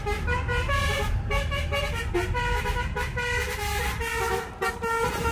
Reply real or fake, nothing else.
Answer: real